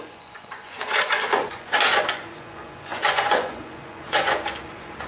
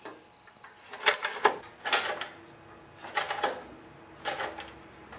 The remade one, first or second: first